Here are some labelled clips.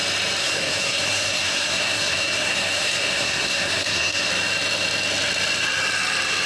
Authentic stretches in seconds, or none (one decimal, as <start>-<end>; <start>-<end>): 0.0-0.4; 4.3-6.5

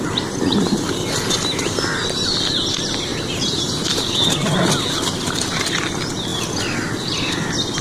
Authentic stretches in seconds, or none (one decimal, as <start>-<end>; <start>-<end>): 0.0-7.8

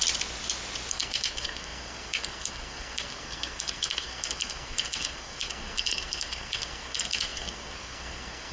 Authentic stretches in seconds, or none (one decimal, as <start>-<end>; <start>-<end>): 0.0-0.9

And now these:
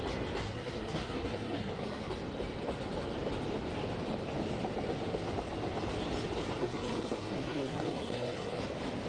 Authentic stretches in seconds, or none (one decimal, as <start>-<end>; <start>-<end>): 0.0-0.4; 2.1-6.6; 8.6-9.1